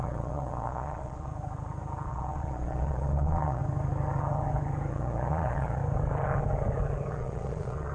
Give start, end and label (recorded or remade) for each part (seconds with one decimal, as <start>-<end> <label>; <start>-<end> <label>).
0.0-1.3 remade; 1.3-2.1 recorded; 2.1-3.6 remade; 3.6-4.9 recorded; 4.9-5.8 remade; 5.8-7.1 recorded; 7.1-7.9 remade